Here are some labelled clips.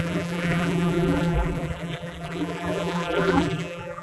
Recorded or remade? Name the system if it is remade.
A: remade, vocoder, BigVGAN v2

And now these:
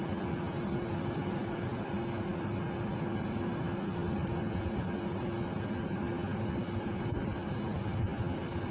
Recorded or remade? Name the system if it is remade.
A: recorded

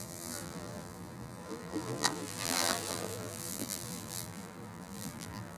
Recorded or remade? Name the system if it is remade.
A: remade, vocoder, BigVGAN v2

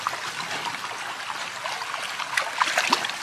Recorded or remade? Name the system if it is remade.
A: recorded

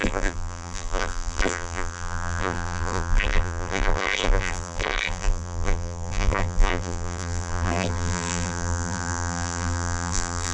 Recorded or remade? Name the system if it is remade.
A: remade, vocoder, BigVGAN v2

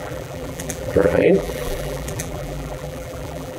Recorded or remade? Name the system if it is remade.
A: remade, vocoder, BigVGAN v2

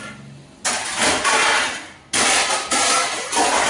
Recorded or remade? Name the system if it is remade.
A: recorded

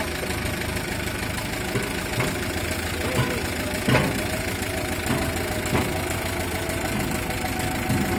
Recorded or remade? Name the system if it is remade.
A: recorded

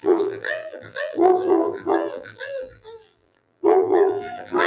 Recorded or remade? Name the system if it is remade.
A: remade, vocoder, BigVGAN v2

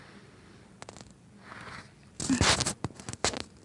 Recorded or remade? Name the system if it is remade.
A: recorded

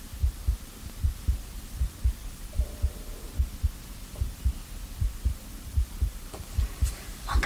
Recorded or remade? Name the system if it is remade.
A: remade, vocoder, BigVGAN v2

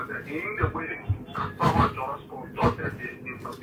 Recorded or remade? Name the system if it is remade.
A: recorded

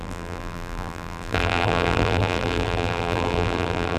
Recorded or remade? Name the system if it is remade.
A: remade, vocoder, BigVGAN v2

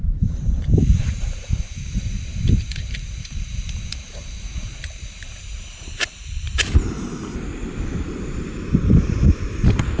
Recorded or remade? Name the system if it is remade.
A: remade, vocoder, BigVGAN v2